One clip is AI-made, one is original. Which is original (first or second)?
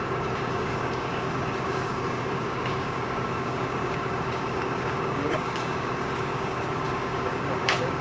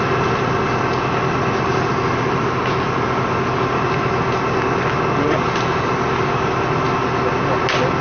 second